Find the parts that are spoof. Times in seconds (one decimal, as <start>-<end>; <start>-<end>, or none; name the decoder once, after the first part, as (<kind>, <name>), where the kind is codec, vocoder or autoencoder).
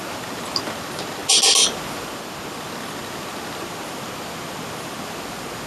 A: none